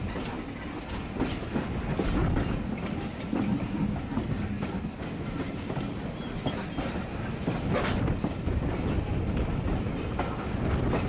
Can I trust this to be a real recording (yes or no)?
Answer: yes